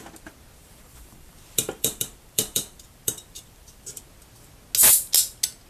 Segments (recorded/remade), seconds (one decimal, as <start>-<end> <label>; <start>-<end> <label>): 0.0-0.6 recorded; 0.6-4.0 remade; 4.0-5.7 recorded